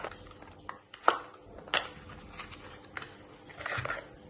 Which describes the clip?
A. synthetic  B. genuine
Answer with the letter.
B